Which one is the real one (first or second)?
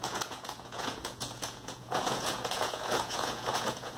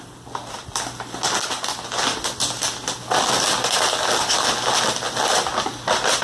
second